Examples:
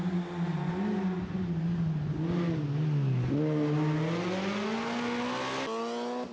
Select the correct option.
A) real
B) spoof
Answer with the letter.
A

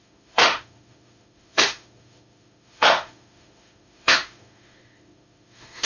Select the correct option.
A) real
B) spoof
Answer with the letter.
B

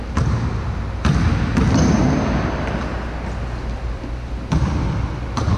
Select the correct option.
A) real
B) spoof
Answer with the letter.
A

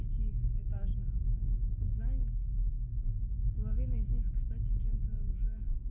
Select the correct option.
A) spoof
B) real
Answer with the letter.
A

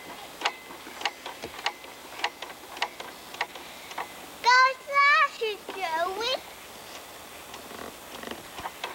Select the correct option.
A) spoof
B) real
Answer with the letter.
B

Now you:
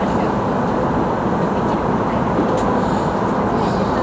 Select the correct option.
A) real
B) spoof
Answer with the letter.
A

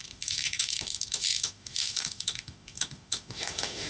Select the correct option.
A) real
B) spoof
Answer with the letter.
B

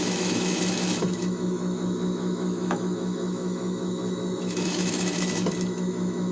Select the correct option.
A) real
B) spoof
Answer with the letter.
B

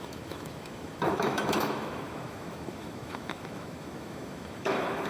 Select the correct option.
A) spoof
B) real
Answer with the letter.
A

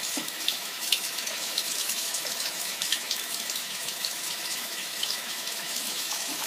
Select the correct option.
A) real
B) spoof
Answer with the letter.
B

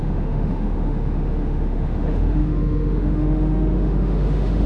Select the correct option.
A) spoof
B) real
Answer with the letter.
A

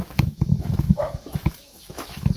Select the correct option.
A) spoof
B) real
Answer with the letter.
A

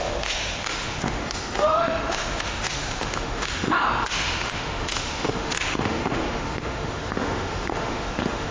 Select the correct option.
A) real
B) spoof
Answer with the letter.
B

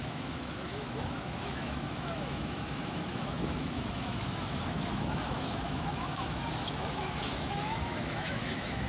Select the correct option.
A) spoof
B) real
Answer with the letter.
A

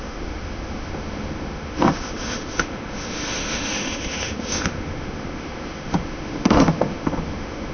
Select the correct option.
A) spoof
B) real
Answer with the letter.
A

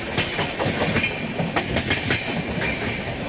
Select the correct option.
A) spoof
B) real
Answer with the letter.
B